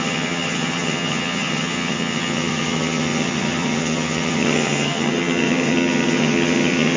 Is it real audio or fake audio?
fake